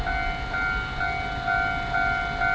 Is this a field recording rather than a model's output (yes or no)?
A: yes